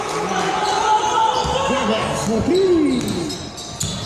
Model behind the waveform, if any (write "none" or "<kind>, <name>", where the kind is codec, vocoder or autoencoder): none